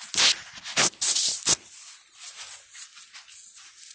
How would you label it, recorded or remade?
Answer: recorded